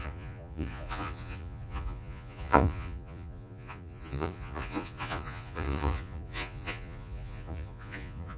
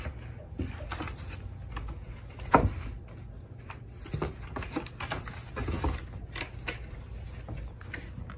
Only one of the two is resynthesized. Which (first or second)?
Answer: first